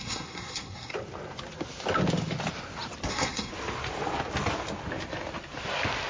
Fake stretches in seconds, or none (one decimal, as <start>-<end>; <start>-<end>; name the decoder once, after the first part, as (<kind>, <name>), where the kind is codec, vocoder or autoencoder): 0.0-0.9 (codec, SNAC); 3.1-3.5